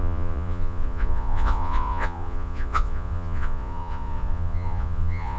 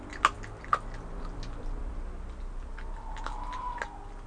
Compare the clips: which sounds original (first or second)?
second